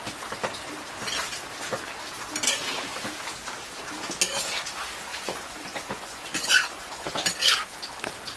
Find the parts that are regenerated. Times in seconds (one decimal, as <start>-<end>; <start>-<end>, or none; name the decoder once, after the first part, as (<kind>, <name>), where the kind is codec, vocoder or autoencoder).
5.1-7.1 (vocoder, Vocos)